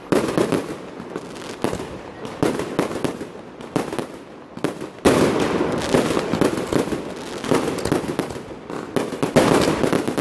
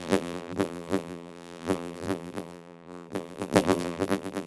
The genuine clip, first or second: first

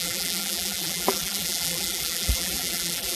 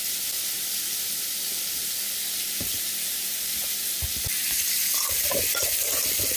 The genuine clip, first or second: second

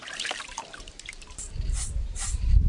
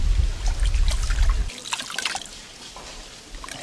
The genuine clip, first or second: second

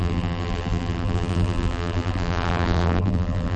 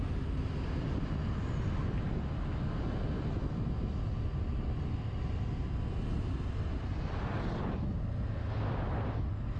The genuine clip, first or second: second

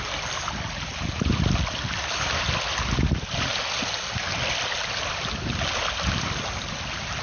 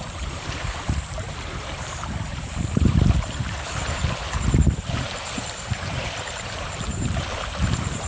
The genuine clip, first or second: first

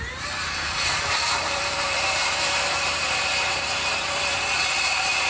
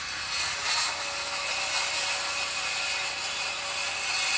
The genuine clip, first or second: second